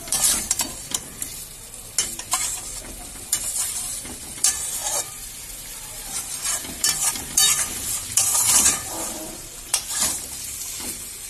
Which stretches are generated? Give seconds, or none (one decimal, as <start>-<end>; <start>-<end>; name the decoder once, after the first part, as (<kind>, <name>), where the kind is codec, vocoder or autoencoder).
0.0-1.3 (vocoder, BigVGAN v2); 2.9-11.3